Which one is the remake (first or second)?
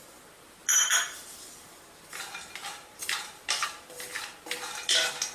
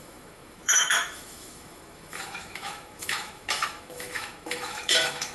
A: second